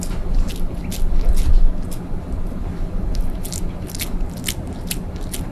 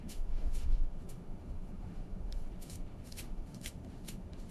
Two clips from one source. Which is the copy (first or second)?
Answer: second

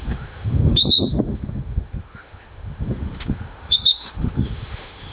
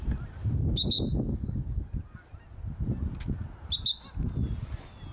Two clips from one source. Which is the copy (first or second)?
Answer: first